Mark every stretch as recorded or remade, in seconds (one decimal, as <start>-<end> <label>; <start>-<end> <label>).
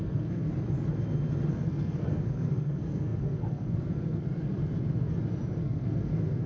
0.0-0.5 remade; 0.5-1.5 recorded; 1.5-4.6 remade; 4.6-5.6 recorded; 5.6-6.5 remade